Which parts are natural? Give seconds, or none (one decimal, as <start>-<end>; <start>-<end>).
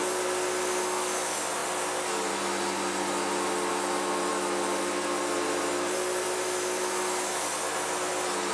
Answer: 0.0-8.5